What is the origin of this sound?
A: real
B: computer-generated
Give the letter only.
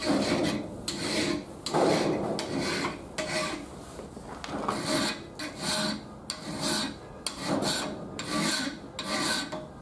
A